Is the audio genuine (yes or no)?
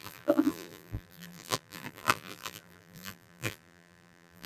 no